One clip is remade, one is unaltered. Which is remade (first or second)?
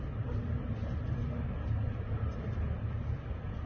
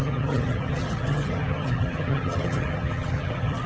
second